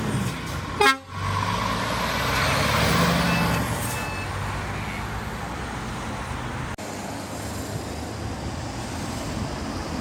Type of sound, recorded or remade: recorded